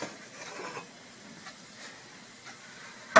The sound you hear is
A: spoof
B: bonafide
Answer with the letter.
B